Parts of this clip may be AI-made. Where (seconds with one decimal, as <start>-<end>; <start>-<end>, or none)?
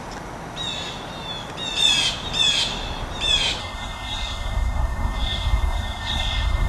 3.6-6.7